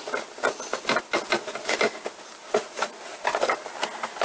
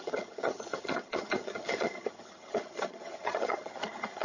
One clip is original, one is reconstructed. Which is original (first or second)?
first